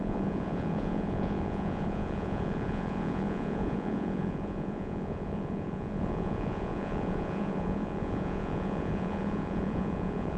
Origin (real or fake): fake